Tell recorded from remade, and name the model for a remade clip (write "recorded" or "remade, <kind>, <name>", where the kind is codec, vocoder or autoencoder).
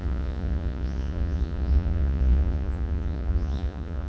remade, vocoder, Vocos